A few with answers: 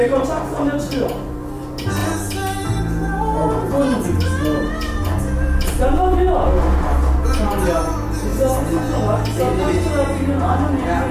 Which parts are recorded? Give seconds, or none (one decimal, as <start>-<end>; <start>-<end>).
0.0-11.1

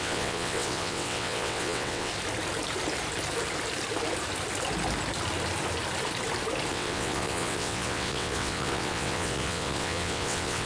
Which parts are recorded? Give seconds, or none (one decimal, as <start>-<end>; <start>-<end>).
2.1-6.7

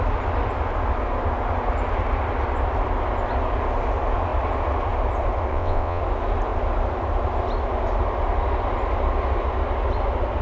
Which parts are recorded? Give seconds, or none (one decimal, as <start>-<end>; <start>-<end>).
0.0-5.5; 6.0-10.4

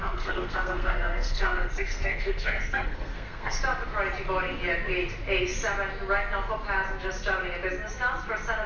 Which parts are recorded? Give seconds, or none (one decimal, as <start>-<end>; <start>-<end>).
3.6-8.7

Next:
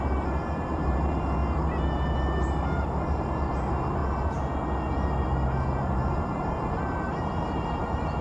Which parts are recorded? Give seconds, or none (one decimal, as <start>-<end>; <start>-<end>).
1.4-2.8; 4.0-5.8

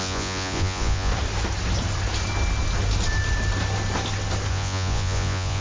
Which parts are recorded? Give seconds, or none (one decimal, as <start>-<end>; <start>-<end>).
1.1-4.5